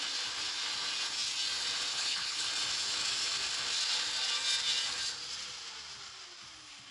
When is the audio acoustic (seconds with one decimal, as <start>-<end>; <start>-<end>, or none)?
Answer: 0.0-1.9; 2.5-6.9